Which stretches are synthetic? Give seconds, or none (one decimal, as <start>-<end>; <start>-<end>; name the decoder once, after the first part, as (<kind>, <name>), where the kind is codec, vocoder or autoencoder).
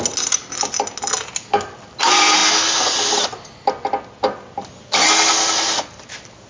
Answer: none